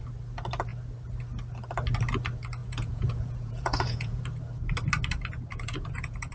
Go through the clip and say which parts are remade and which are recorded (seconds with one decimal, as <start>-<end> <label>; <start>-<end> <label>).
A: 0.0-2.6 recorded; 2.6-4.2 remade; 4.2-5.5 recorded; 5.5-6.3 remade